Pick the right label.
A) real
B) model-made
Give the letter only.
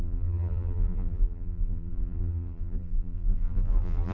B